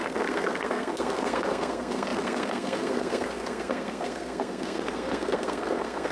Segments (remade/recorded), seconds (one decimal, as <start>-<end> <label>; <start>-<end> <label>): 0.0-6.1 remade